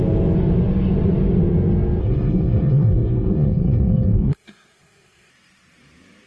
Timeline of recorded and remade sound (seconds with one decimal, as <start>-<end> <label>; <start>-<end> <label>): 0.0-2.0 recorded; 2.0-5.3 remade; 5.3-6.3 recorded